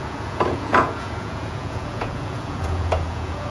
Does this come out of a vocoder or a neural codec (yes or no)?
yes